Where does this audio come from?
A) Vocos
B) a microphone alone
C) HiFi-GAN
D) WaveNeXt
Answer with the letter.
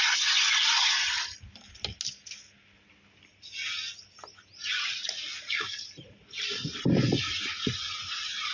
B